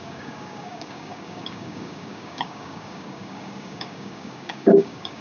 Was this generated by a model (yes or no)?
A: yes